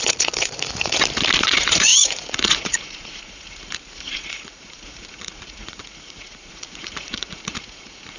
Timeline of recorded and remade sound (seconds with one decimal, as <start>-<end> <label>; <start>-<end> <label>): 0.0-1.0 remade; 1.0-1.5 recorded; 1.5-8.2 remade